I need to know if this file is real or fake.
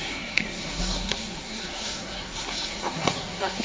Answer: fake